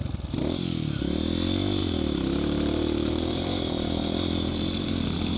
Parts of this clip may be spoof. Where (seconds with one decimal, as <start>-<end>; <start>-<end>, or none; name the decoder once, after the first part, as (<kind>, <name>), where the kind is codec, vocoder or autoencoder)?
1.8-5.0 (vocoder, BigVGAN v2)